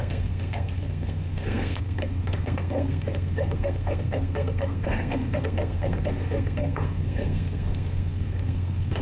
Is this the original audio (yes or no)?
no